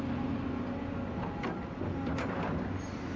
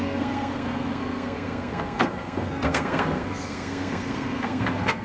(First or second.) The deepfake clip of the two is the second